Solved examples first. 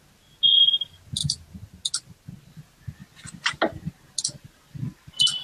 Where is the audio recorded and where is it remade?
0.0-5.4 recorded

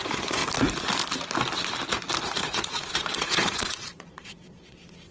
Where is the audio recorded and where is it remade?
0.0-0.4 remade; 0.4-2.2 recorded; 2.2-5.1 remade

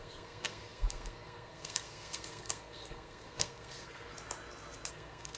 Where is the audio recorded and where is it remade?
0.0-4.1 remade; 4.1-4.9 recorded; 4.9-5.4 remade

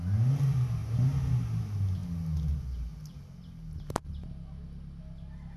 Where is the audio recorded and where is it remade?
0.0-5.6 recorded

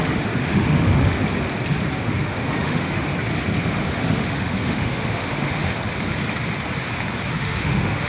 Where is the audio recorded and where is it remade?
0.0-1.2 remade; 1.2-2.0 recorded; 2.0-3.1 remade; 3.1-3.6 recorded; 3.6-5.7 remade; 5.7-7.3 recorded; 7.3-8.1 remade